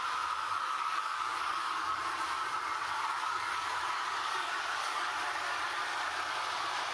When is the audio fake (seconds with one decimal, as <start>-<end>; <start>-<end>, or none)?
0.4-2.0; 2.9-5.1